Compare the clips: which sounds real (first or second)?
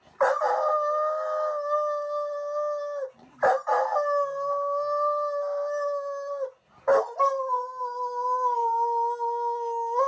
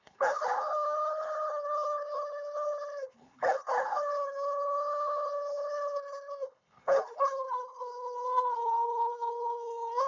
first